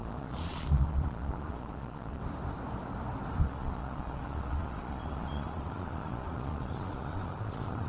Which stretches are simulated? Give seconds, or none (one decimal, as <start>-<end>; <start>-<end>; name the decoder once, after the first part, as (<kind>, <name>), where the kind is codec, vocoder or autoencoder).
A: 0.0-2.2 (vocoder, Vocos); 3.4-7.9